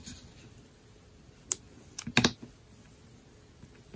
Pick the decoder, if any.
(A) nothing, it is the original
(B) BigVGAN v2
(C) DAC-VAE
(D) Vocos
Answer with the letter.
A